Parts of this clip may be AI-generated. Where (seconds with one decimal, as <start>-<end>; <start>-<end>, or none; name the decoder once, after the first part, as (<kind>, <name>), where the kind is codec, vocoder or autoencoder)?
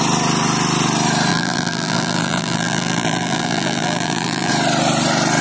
1.3-4.5 (vocoder, BigVGAN v2)